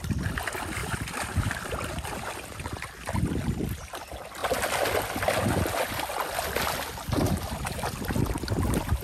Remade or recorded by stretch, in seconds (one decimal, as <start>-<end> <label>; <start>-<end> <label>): 0.0-0.8 recorded; 0.8-2.9 remade; 2.9-9.0 recorded